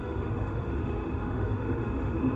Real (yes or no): no